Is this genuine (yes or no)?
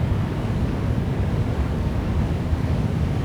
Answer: no